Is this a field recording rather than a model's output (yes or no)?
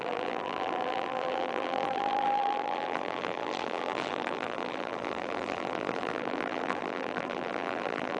no